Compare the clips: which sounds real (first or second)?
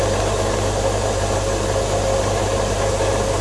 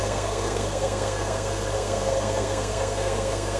first